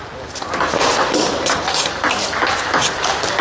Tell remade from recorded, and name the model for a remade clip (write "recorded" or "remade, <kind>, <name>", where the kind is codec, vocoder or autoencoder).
recorded